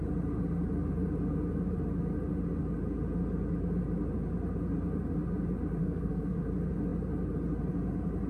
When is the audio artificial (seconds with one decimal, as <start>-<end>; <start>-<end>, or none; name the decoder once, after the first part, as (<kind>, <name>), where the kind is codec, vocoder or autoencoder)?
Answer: 5.8-6.4 (codec, SNAC)